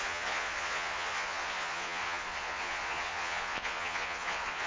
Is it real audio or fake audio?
fake